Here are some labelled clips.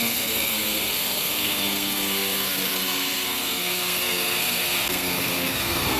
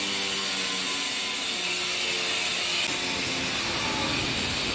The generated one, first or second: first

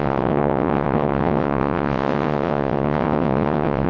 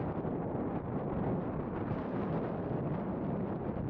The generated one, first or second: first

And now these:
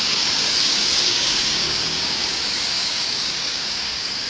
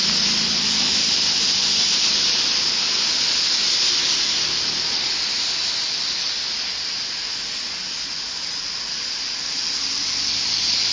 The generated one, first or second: first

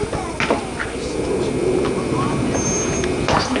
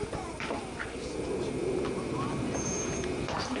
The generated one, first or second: second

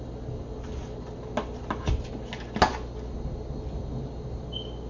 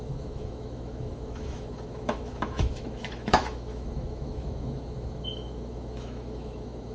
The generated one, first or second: second